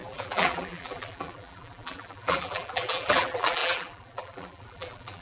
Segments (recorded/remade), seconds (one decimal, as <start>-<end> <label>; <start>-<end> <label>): 0.0-5.2 remade